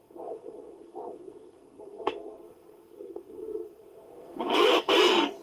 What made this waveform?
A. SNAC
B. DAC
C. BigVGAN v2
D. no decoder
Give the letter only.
A